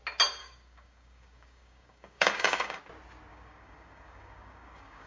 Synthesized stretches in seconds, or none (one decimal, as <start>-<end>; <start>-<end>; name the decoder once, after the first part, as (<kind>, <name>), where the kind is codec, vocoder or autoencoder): 0.4-2.8 (codec, DAC); 3.3-5.1